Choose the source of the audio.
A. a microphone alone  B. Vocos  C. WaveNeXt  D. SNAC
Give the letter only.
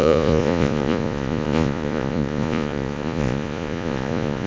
B